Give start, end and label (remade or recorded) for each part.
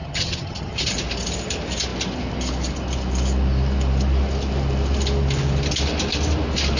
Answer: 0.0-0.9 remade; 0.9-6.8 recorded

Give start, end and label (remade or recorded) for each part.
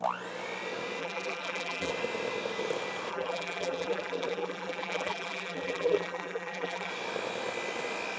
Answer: 0.0-1.0 recorded; 1.0-1.9 remade; 1.9-3.1 recorded; 3.1-6.9 remade; 6.9-8.2 recorded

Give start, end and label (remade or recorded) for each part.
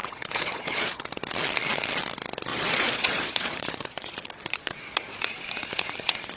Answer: 0.0-1.1 remade; 1.1-2.5 recorded; 2.5-6.4 remade